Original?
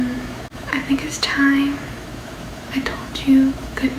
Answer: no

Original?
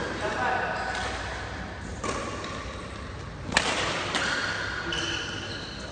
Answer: yes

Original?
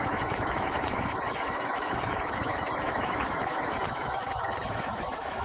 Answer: no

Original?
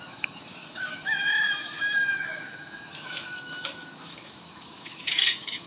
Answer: no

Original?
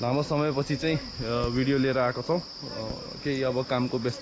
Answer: yes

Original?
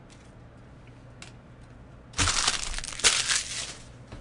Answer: yes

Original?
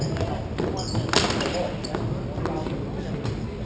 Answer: yes